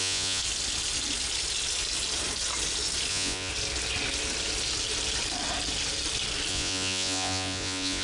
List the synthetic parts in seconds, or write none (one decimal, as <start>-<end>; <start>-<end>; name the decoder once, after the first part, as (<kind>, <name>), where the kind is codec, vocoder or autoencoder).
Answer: 0.0-0.4 (vocoder, Vocos); 3.1-3.5; 6.5-8.0